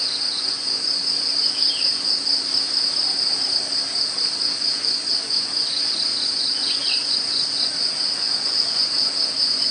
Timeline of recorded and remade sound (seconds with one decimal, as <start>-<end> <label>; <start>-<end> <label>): 0.0-2.5 remade; 2.5-4.4 recorded; 4.4-9.7 remade